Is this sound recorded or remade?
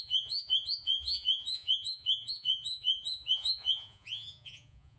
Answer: remade